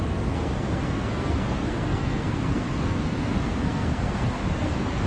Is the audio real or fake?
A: fake